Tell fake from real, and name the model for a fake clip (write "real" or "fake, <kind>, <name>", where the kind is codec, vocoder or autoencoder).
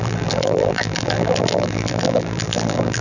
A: fake, vocoder, BigVGAN v2